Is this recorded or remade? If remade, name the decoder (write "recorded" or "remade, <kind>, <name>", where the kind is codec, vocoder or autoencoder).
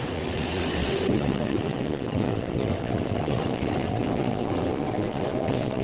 remade, vocoder, WaveNeXt